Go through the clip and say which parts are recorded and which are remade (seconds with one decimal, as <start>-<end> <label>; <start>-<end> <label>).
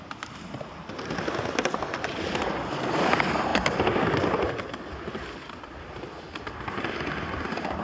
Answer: 0.0-7.8 recorded